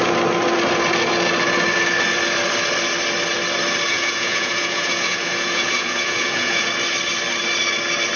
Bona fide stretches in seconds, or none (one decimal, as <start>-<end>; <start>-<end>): 0.0-3.9; 6.7-8.2